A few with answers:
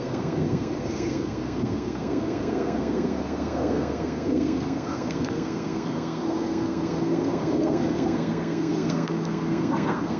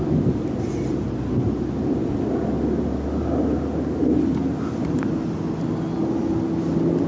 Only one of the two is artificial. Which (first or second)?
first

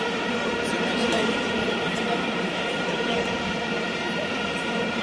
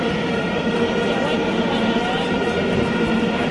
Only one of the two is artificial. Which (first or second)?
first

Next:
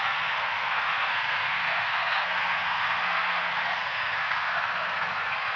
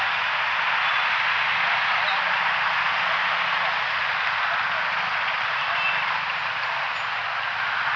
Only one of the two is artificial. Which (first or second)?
first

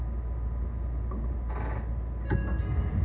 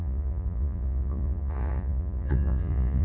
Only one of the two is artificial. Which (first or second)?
second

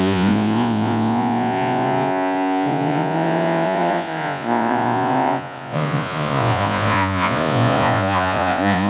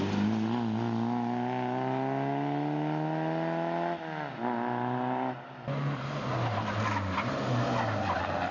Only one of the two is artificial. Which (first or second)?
first